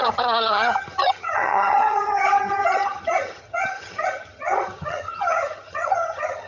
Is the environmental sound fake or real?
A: fake